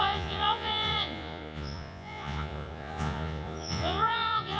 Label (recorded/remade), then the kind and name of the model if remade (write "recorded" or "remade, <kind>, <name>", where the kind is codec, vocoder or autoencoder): remade, vocoder, Vocos